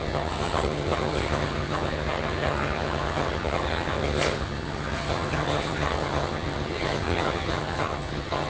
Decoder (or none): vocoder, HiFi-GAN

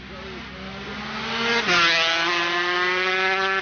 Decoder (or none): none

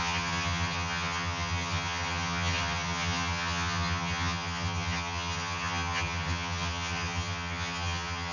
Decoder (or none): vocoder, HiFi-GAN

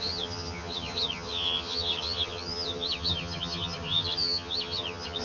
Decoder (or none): vocoder, HiFi-GAN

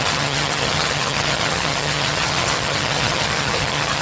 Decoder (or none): vocoder, HiFi-GAN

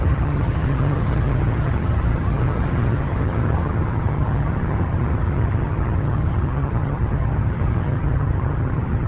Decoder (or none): vocoder, HiFi-GAN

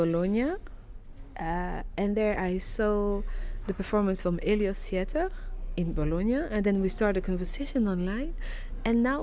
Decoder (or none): none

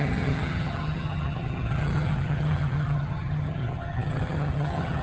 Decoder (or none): vocoder, HiFi-GAN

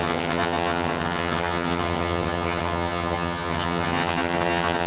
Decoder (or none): vocoder, HiFi-GAN